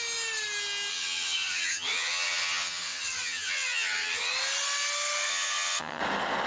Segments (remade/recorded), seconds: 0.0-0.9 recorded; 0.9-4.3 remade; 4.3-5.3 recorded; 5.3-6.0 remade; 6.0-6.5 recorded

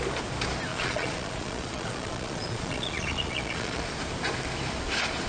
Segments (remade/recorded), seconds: 0.0-0.7 recorded; 0.7-3.9 remade; 3.9-5.3 recorded

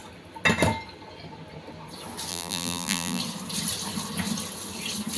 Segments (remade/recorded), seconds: 0.0-2.3 recorded; 2.3-3.2 remade; 3.2-5.2 recorded

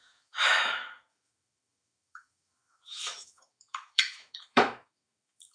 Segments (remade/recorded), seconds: 0.0-5.5 remade

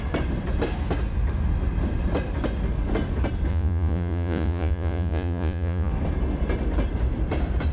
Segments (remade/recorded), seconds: 0.0-3.5 recorded; 3.5-5.9 remade; 5.9-7.7 recorded

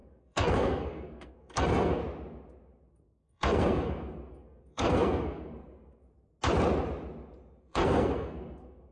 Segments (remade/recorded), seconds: 0.0-2.0 remade; 2.0-2.9 recorded; 2.9-6.0 remade; 6.0-7.6 recorded; 7.6-8.9 remade

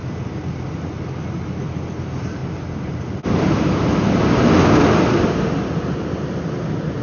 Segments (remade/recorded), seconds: 0.0-2.4 recorded; 2.4-3.0 remade; 3.0-7.0 recorded

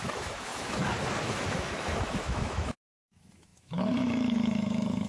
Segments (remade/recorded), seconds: 0.0-5.1 remade